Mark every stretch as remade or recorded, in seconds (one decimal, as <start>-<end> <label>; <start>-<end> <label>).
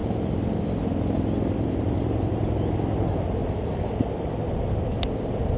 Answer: 0.0-0.6 remade; 0.6-3.4 recorded; 3.4-4.1 remade; 4.1-5.6 recorded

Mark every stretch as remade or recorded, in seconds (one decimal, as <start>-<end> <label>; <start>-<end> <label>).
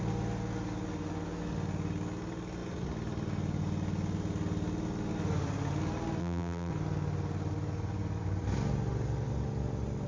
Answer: 0.0-6.2 recorded; 6.2-6.7 remade; 6.7-10.1 recorded